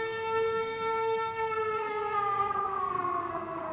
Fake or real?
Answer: fake